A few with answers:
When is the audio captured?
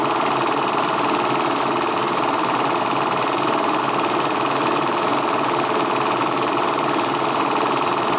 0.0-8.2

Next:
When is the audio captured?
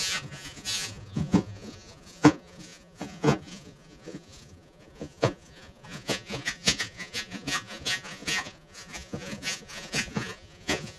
none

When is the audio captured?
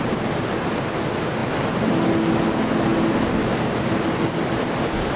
0.0-5.2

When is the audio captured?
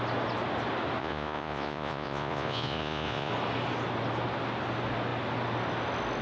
0.0-1.0; 3.3-6.2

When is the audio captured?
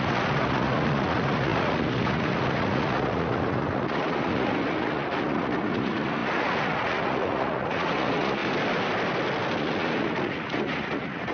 8.4-9.6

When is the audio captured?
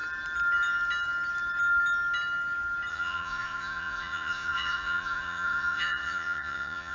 0.0-2.9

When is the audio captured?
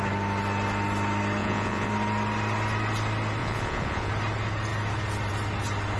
0.0-1.4; 1.9-3.4; 4.1-6.0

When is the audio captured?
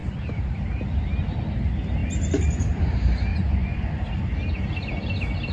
0.0-3.3; 3.9-5.5